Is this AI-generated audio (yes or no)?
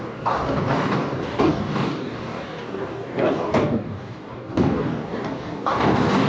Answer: yes